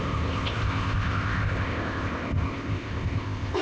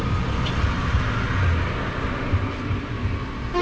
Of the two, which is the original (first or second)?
second